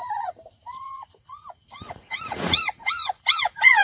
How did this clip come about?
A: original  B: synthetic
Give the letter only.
B